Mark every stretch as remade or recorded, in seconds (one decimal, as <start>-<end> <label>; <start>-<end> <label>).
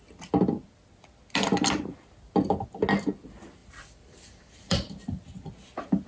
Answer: 0.0-3.6 recorded; 3.6-4.9 remade; 4.9-6.1 recorded